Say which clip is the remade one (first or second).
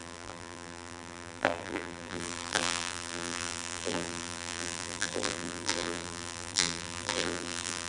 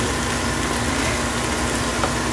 first